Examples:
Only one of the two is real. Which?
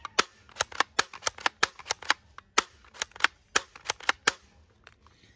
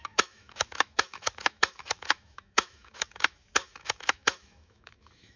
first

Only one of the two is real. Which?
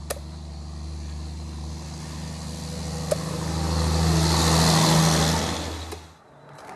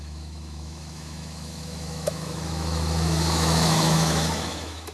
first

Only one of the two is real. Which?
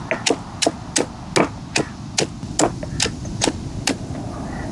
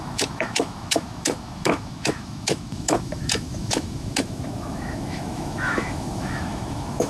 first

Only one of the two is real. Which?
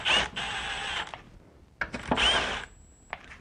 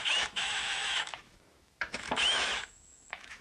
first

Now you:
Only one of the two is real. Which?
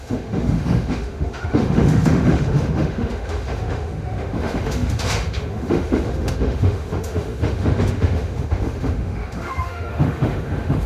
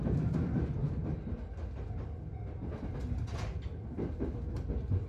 second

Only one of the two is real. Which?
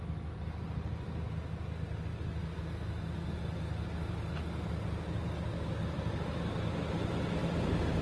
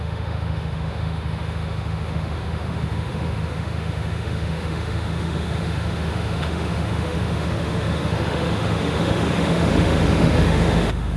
first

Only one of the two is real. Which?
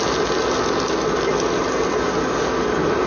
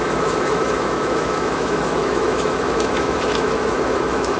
first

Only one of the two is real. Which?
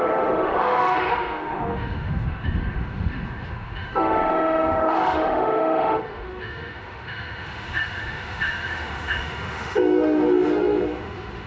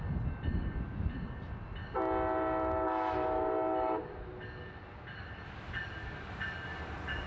second